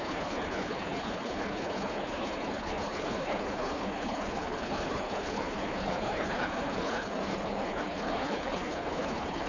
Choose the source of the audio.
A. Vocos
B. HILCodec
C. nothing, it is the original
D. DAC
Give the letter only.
B